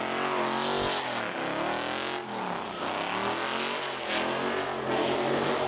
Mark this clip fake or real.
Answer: real